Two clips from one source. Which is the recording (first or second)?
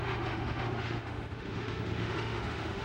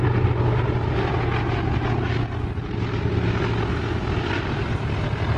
second